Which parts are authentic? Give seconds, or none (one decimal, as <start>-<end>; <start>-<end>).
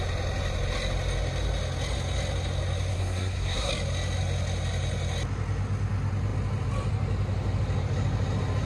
0.0-2.9; 3.7-8.7